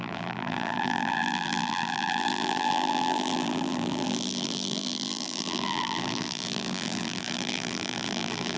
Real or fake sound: fake